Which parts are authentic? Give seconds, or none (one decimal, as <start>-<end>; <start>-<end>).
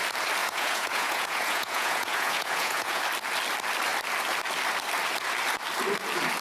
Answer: 0.0-0.4; 3.0-6.4